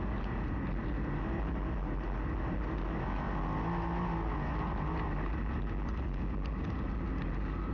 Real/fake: real